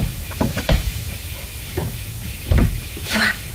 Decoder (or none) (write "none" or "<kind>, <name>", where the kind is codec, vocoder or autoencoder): autoencoder, DAC-VAE